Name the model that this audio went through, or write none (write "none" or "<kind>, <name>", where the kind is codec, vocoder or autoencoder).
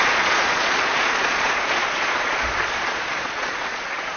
vocoder, Vocos